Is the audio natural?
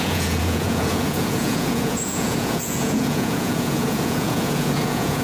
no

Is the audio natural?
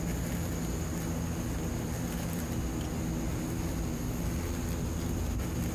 yes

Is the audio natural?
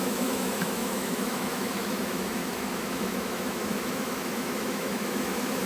no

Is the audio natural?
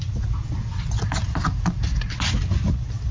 yes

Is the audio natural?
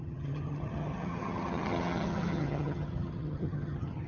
no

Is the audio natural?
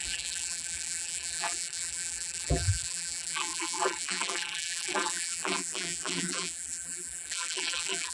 no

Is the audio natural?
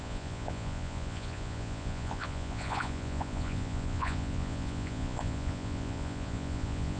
no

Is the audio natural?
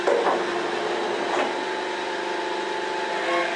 yes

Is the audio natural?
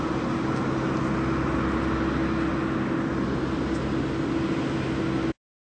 yes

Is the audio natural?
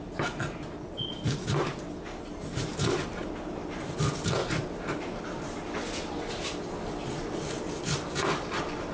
yes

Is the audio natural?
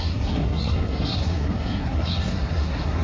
no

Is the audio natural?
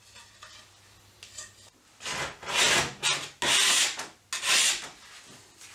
yes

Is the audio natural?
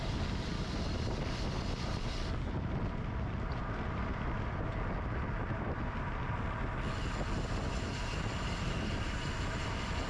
yes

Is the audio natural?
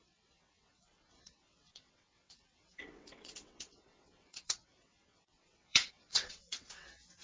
no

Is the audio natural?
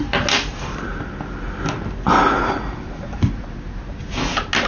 yes